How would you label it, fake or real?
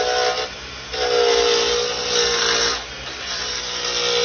real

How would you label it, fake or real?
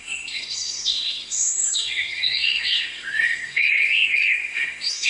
fake